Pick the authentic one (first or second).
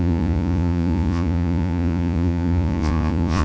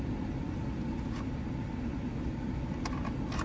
second